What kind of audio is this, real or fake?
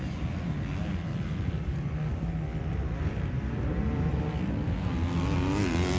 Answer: real